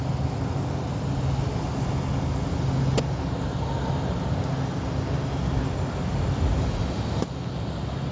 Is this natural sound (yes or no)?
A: yes